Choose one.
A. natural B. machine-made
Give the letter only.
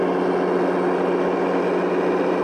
A